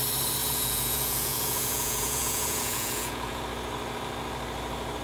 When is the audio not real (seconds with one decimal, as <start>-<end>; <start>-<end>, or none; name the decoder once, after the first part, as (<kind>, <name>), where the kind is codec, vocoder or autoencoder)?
0.4-3.4 (vocoder, Vocos)